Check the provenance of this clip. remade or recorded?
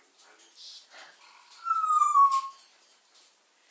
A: recorded